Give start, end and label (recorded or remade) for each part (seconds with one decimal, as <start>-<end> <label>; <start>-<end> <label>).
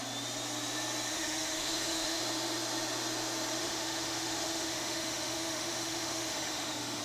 0.0-1.1 recorded; 1.1-2.2 remade; 2.2-3.6 recorded; 3.6-7.0 remade